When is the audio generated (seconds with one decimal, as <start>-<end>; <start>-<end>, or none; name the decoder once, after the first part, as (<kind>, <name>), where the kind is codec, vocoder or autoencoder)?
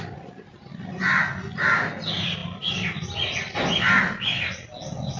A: none